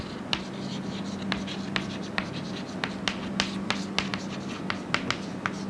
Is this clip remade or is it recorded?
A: recorded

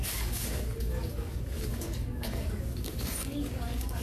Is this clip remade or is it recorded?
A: remade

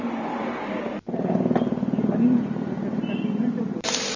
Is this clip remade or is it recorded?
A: recorded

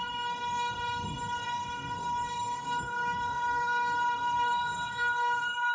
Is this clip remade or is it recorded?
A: remade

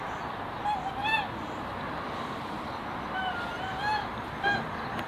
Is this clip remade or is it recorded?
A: recorded